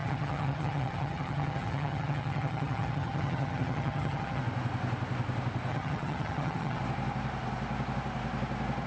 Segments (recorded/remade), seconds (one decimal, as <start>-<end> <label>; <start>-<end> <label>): 0.0-4.4 remade; 4.4-5.7 recorded; 5.7-6.8 remade; 6.8-8.9 recorded